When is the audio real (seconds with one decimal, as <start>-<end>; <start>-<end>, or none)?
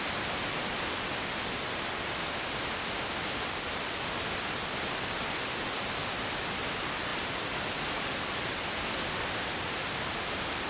0.0-10.7